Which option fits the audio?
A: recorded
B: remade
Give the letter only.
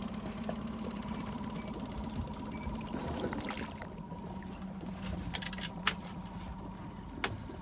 A